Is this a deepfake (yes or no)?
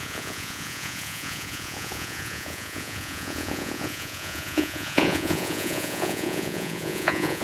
yes